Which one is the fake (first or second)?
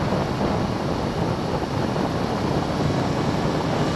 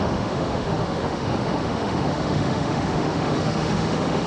second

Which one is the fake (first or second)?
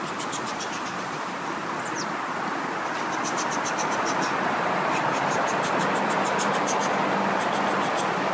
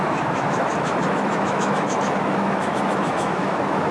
second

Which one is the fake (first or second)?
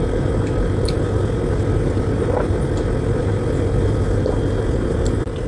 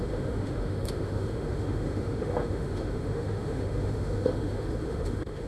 second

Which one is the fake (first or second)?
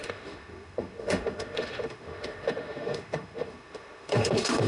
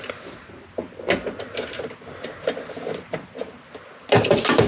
first